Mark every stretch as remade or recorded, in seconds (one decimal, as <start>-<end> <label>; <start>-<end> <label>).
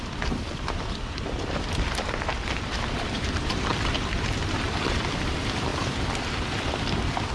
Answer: 0.0-7.3 remade